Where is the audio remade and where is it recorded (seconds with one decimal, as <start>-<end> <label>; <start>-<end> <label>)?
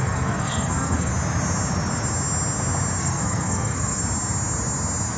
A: 0.0-1.1 remade; 1.1-3.0 recorded; 3.0-4.0 remade; 4.0-5.2 recorded